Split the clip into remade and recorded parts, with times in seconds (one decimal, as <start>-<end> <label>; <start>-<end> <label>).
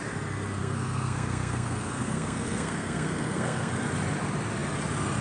0.0-0.6 recorded; 0.6-3.7 remade; 3.7-5.2 recorded